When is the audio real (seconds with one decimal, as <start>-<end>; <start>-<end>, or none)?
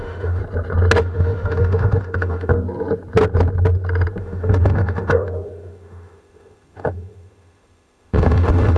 0.4-1.0; 2.5-4.2